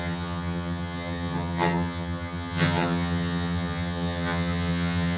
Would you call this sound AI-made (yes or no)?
yes